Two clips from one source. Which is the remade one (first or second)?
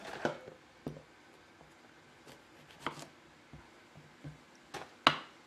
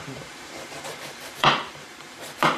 second